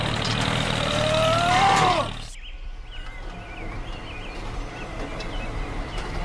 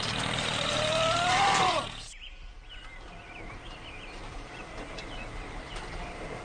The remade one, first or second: second